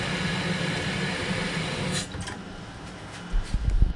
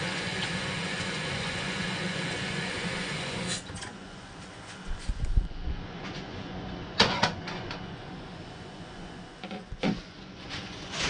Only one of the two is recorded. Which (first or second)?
first